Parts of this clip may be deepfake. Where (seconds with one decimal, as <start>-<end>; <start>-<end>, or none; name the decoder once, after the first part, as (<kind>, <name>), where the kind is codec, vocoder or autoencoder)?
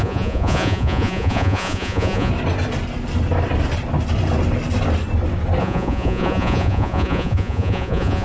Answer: 0.0-2.3 (vocoder, Vocos); 5.6-8.2